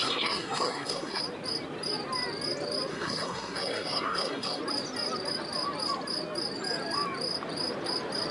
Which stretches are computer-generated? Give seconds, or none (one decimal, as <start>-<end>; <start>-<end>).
0.0-1.2; 2.9-4.6